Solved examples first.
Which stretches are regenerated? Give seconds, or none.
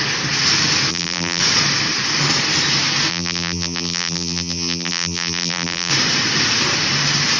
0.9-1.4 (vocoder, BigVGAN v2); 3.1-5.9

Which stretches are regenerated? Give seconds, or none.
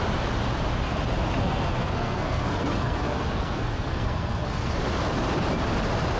1.4-4.7 (codec, SNAC)